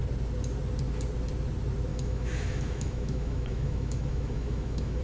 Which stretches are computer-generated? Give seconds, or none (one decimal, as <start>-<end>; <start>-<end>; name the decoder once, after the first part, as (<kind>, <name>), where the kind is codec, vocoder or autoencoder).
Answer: 1.9-5.0 (autoencoder, DAC-VAE)